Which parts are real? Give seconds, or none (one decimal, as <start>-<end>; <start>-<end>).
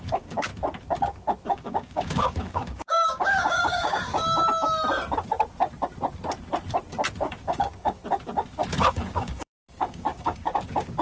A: 0.5-1.5; 4.4-7.2; 8.0-8.9